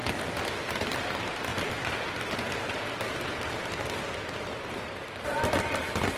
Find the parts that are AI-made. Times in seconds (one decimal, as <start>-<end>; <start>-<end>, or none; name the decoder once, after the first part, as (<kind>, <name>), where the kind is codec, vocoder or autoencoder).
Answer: 0.0-1.5 (vocoder, BigVGAN v2); 5.1-6.2